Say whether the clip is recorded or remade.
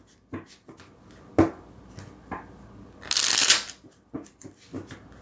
recorded